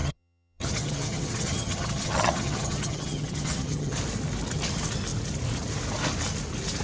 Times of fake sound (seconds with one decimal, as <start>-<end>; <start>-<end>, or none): 0.0-4.0